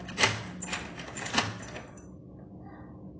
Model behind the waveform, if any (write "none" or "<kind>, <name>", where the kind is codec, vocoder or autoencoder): none